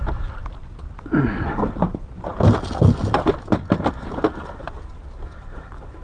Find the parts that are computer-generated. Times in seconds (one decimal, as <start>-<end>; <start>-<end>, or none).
none